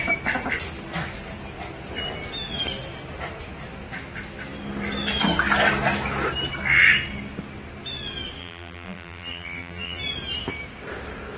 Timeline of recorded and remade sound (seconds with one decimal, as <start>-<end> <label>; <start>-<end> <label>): 0.0-8.4 recorded; 8.4-10.0 remade; 10.0-11.4 recorded